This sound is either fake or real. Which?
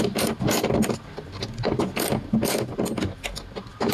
real